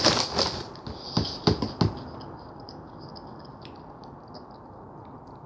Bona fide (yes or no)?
yes